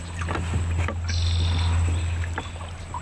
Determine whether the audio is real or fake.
real